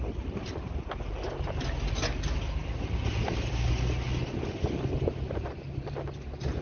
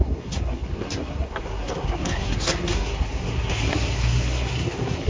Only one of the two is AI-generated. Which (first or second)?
second